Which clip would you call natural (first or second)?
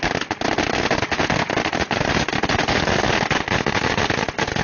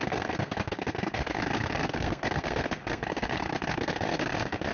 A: first